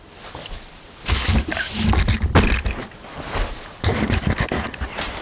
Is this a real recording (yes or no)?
yes